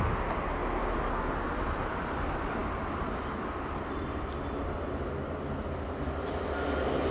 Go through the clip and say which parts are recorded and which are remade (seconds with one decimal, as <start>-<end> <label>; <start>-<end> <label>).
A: 0.0-7.1 recorded